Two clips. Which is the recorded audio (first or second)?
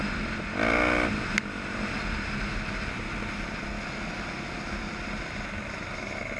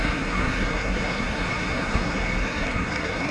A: first